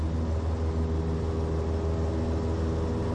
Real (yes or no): yes